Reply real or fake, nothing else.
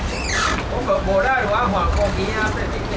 real